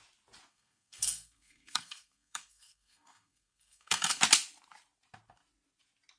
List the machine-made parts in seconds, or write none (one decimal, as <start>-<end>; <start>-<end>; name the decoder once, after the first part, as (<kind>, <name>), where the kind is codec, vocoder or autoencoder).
0.5-4.2 (codec, SNAC)